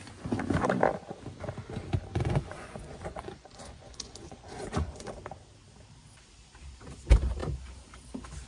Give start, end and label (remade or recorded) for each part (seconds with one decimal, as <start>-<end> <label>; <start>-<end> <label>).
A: 0.0-2.1 recorded; 2.1-5.1 remade; 5.1-8.5 recorded